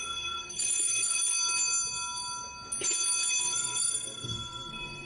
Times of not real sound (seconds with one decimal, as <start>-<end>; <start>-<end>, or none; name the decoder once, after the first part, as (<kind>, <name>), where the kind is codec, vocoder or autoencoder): 0.0-1.2 (codec, SNAC); 3.4-5.1